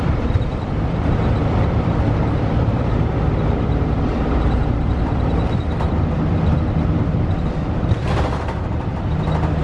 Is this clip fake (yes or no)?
yes